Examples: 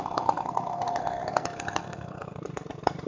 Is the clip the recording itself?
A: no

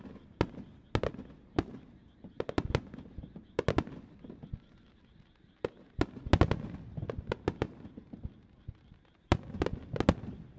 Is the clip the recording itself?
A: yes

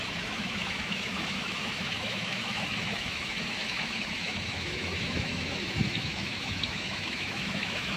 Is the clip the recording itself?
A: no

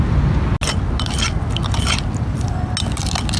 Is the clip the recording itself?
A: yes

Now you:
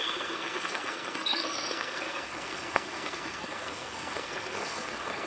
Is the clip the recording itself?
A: no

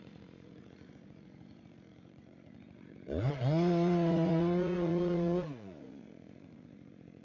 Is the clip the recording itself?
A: no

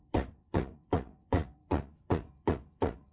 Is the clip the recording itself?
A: no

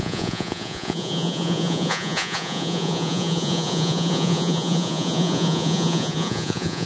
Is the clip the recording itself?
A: no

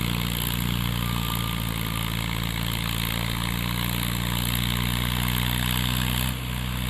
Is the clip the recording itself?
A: yes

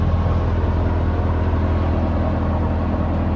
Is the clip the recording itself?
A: yes